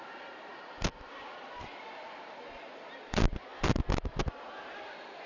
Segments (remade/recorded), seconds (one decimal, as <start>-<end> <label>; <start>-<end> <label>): 0.0-5.3 recorded